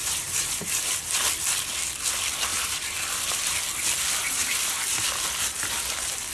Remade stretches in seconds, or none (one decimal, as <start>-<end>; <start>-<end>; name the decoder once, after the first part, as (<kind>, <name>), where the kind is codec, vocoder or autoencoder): 0.0-1.0 (vocoder, BigVGAN v2); 2.5-3.1; 4.2-4.8